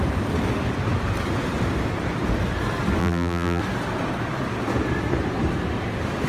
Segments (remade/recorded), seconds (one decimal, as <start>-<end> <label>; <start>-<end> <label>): 0.0-3.0 recorded; 3.0-3.6 remade; 3.6-6.3 recorded